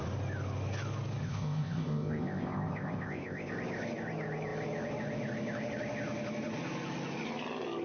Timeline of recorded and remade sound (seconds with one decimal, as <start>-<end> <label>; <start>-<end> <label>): 0.0-1.2 recorded; 1.2-3.5 remade; 3.5-7.8 recorded